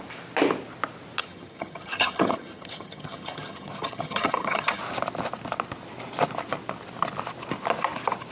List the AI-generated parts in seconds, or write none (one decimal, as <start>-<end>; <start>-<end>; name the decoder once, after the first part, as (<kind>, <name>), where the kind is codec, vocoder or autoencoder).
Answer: 1.2-4.8 (vocoder, HiFi-GAN)